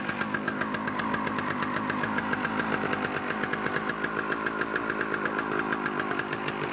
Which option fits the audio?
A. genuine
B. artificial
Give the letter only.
A